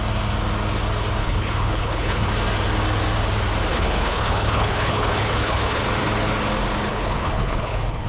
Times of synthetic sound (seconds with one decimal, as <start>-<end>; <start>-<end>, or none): 1.2-2.3; 3.7-5.8; 6.9-8.1